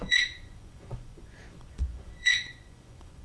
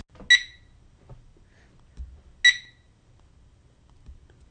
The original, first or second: second